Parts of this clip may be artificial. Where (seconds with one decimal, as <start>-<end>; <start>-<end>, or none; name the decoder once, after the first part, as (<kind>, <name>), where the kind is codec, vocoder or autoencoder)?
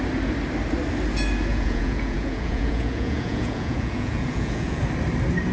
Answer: 1.5-4.8 (vocoder, Vocos)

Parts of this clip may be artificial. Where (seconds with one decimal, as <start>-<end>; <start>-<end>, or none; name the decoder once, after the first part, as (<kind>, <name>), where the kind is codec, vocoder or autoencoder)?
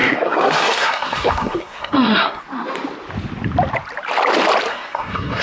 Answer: 0.0-2.4 (codec, SNAC); 4.7-5.4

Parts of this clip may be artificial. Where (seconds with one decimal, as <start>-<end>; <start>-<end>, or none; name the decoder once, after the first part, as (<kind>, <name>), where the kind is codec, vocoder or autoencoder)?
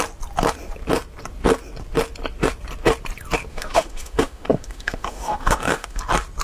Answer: 3.5-6.0 (autoencoder, DAC-VAE)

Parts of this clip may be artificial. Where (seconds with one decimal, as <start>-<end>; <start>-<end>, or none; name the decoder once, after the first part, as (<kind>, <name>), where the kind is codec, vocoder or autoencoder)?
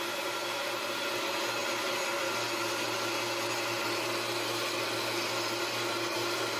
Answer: none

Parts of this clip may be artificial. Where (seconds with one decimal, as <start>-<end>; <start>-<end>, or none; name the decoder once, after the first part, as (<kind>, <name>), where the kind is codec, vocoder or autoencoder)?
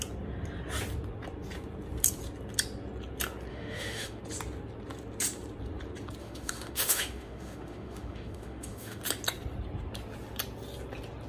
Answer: 3.5-4.2 (autoencoder, DAC-VAE); 6.2-9.0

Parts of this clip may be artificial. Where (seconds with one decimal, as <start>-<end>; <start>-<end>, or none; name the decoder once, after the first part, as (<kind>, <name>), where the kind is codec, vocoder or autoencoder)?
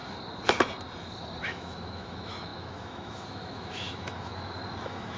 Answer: 1.4-4.3 (autoencoder, DAC-VAE); 4.8-5.2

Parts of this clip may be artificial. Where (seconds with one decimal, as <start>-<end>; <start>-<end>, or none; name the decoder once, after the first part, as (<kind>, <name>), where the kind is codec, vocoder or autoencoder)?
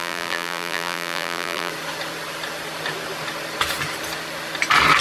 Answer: 0.0-1.7 (vocoder, BigVGAN v2)